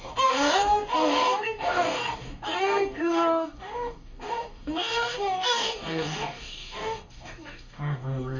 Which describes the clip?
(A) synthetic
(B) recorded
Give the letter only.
A